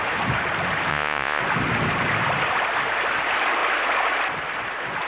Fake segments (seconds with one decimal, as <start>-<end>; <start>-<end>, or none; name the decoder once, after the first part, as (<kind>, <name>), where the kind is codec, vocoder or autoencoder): 0.9-1.4 (vocoder, Vocos)